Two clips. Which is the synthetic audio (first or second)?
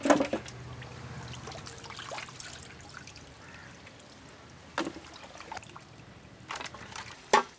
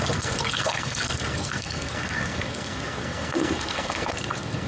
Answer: second